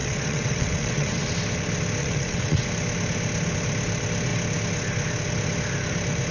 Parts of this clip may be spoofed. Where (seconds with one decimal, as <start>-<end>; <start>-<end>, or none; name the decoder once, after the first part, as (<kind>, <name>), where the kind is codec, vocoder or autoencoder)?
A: 0.0-1.3 (vocoder, WaveNeXt); 2.0-2.7